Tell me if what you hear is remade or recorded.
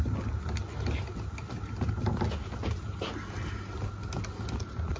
recorded